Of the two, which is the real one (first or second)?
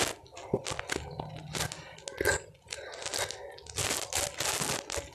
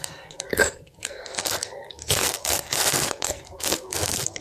first